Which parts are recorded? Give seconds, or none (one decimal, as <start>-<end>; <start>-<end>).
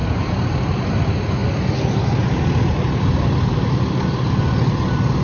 0.0-5.2